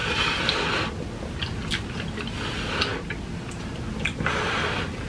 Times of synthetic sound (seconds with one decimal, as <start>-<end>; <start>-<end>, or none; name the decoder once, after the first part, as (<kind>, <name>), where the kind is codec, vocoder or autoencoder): none